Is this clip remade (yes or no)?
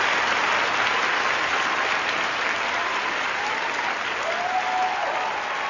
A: no